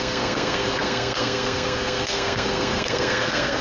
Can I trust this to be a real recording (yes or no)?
no